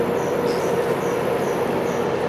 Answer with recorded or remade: recorded